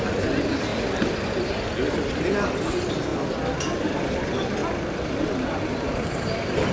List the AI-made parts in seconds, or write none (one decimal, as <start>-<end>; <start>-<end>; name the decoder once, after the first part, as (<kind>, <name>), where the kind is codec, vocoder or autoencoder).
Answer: 4.6-6.3 (vocoder, BigVGAN v2)